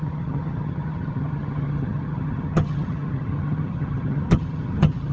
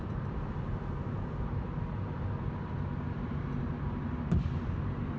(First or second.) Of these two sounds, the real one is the second